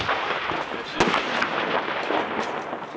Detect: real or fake real